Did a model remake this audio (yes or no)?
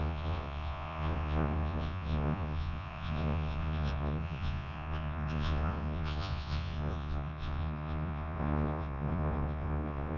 yes